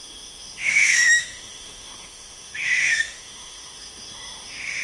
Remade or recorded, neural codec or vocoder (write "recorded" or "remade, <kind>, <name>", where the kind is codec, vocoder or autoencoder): remade, autoencoder, DAC-VAE